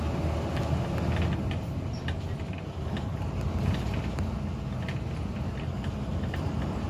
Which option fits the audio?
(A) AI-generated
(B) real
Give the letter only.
B